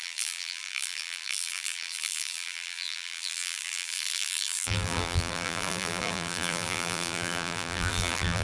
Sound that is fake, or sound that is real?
fake